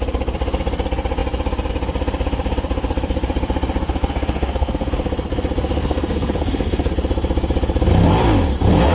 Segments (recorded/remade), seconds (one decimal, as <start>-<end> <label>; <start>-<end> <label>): 0.0-4.0 recorded; 4.0-4.9 remade; 4.9-5.8 recorded; 5.8-6.9 remade; 6.9-8.9 recorded

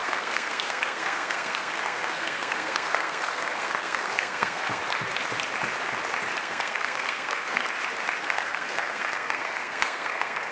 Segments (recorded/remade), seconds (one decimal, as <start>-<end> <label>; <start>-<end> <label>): 0.0-4.8 remade; 4.8-6.4 recorded; 6.4-7.6 remade; 7.6-8.2 recorded; 8.2-10.5 remade